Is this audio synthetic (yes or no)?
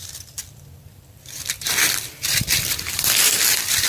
yes